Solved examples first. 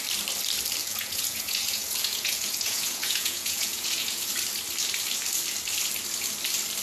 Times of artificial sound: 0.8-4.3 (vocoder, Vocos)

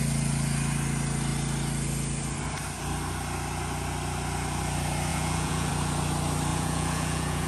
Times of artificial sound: 5.1-5.7 (vocoder, Vocos); 6.5-7.5

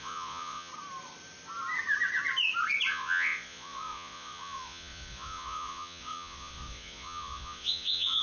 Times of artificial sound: 0.0-0.7 (vocoder, Vocos); 2.9-8.2